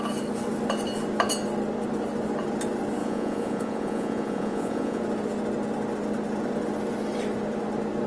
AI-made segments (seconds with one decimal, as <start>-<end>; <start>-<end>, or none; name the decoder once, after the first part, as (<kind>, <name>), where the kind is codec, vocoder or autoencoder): 3.0-5.0 (vocoder, Vocos)